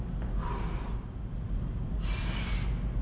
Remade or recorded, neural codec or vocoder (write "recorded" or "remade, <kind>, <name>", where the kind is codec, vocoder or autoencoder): recorded